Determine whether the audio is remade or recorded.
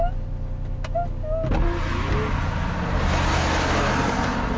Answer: recorded